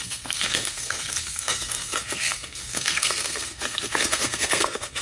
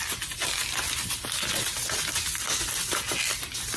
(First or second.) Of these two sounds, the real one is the second